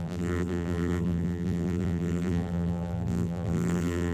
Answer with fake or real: fake